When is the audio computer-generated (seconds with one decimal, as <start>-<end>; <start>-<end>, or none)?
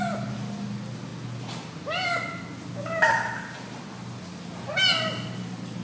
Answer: none